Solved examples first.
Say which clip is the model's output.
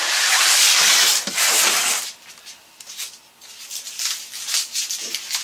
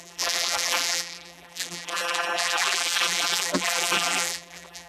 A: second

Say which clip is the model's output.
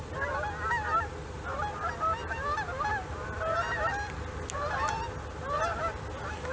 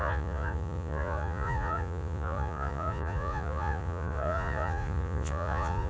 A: second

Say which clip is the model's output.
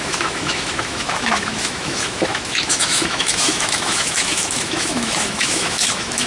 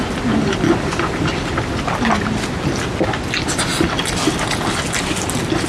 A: first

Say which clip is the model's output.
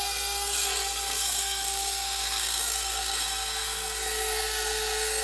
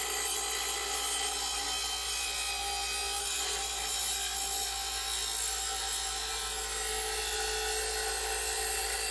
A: first